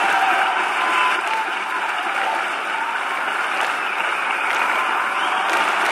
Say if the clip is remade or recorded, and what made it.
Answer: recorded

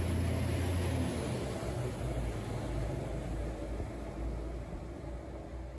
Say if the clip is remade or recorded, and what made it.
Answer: recorded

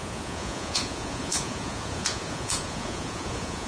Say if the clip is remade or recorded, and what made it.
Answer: remade, vocoder, Vocos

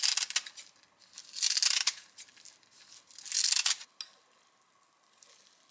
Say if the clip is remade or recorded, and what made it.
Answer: recorded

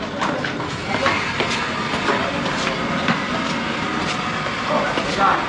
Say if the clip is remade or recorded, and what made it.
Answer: recorded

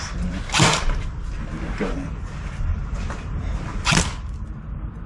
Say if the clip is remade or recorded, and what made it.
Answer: recorded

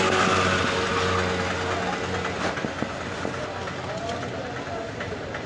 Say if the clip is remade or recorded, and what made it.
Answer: recorded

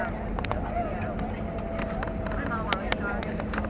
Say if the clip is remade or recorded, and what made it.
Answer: recorded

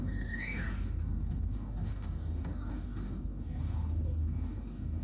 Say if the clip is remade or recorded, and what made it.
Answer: remade, codec, DAC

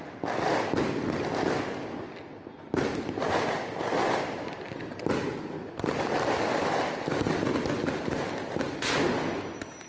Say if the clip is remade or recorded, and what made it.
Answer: recorded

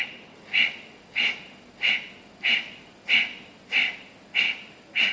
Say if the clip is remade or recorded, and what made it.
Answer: recorded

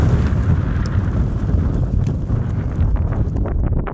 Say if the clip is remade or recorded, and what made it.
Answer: recorded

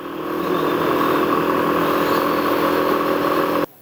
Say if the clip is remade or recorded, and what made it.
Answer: recorded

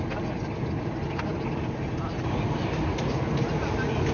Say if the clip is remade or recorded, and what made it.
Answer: recorded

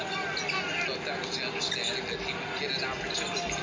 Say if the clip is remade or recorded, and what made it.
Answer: recorded